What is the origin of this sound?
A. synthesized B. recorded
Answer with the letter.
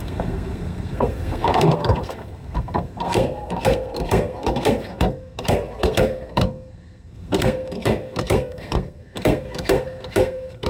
A